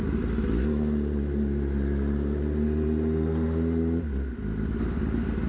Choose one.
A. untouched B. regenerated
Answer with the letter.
A